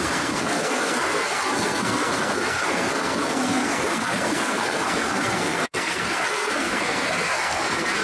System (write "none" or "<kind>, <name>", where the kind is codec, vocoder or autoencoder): codec, SNAC